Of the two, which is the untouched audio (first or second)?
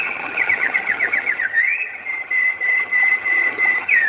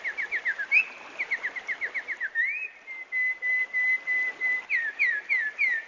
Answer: second